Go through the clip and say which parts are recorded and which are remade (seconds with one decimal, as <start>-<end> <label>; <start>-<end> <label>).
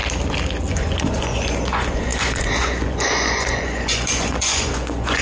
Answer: 0.0-0.7 recorded; 0.7-5.2 remade